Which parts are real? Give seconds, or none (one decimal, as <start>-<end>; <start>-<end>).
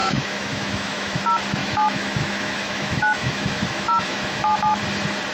1.2-1.6; 4.8-5.3